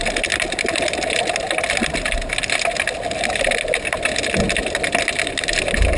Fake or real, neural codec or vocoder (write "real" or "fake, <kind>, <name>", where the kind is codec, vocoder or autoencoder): real